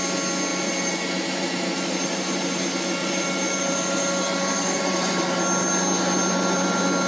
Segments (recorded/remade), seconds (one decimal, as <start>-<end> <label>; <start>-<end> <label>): 0.0-0.5 recorded; 0.5-2.5 remade; 2.5-3.0 recorded; 3.0-5.4 remade; 5.4-7.1 recorded